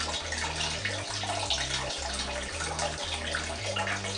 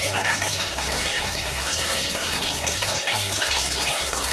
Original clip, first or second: first